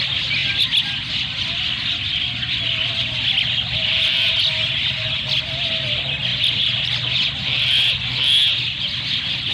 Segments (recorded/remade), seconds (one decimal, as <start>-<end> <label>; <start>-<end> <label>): 0.0-9.5 recorded